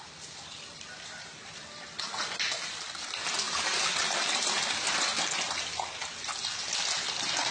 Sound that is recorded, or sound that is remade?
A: remade